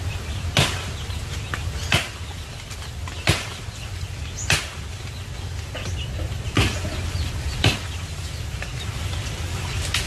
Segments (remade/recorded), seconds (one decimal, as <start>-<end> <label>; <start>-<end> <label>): 0.0-10.1 recorded